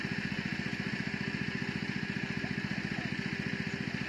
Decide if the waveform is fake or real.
real